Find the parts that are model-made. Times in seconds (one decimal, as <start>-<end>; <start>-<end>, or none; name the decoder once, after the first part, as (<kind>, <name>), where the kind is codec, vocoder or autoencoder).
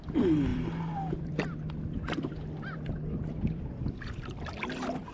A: 0.5-3.6 (vocoder, BigVGAN v2)